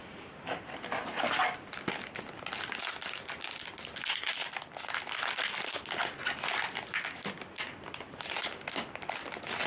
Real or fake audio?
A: real